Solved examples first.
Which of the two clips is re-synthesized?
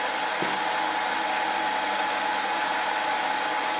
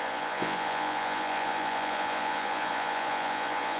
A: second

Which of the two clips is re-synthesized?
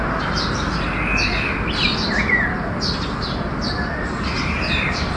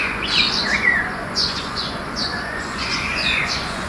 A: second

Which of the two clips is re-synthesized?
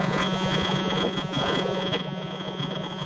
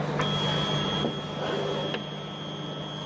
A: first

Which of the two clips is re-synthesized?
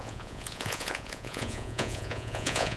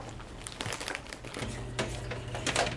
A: first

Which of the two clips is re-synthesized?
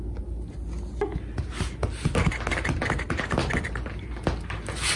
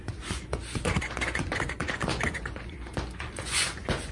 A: second